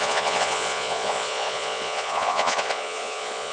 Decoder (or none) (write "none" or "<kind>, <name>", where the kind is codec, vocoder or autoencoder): vocoder, Vocos